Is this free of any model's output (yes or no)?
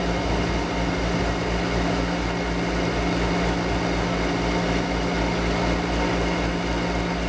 yes